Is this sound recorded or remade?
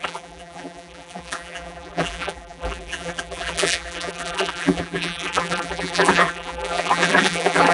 remade